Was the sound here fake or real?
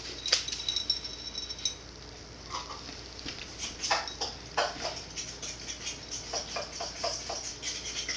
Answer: real